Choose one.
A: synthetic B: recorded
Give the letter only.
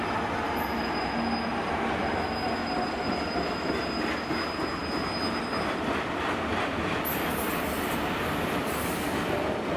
B